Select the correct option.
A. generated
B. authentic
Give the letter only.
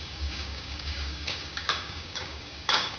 A